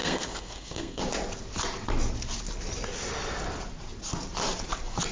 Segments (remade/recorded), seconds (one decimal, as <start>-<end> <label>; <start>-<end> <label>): 0.0-1.0 remade; 1.0-5.1 recorded